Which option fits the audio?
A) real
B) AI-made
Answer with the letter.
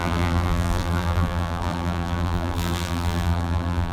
B